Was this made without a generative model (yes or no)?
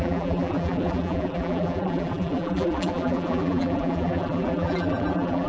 no